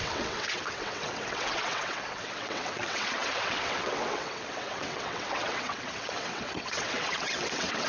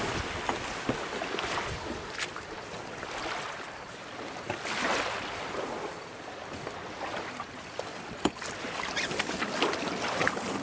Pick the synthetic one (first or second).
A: first